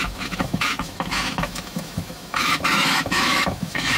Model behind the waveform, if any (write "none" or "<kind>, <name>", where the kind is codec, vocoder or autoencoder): autoencoder, DAC-VAE